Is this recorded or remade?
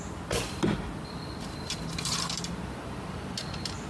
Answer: recorded